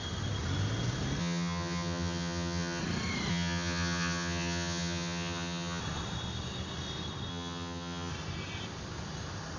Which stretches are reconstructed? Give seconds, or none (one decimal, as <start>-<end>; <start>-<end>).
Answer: 1.2-2.8; 3.3-5.8; 7.3-8.1